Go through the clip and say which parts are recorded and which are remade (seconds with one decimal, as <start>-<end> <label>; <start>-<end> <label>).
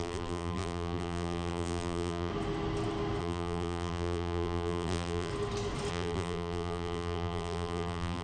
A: 0.0-2.3 remade; 2.3-3.2 recorded; 3.2-5.3 remade; 5.3-5.9 recorded; 5.9-8.2 remade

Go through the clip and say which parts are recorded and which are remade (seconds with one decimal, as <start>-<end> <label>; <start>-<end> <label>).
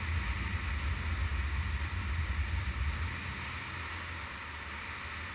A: 0.0-5.3 recorded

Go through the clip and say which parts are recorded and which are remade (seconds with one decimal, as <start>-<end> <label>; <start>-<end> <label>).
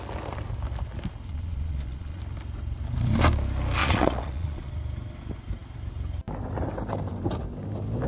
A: 0.0-1.3 recorded; 1.3-2.2 remade; 2.2-3.8 recorded; 3.8-4.7 remade; 4.7-8.1 recorded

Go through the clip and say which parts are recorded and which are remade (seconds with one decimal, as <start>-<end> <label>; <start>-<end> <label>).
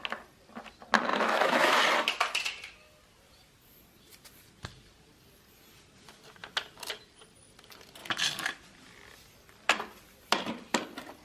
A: 0.0-1.1 recorded; 1.1-1.8 remade; 1.8-11.2 recorded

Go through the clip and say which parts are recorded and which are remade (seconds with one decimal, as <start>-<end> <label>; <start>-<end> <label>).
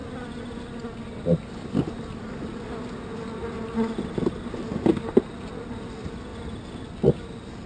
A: 0.0-7.7 recorded